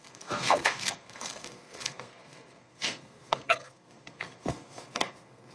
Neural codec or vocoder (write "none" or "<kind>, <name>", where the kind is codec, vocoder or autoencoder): codec, SNAC